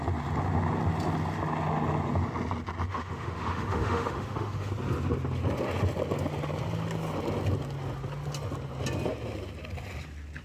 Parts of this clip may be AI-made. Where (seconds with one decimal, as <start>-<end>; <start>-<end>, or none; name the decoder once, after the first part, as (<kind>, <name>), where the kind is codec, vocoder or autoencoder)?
2.9-4.7 (autoencoder, DAC-VAE)